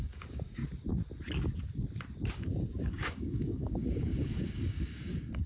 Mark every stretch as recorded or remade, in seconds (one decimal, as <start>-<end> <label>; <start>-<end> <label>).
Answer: 0.0-0.6 remade; 0.6-2.3 recorded; 2.3-5.5 remade